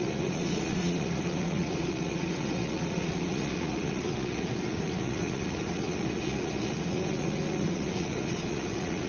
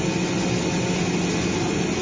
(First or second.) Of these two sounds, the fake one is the first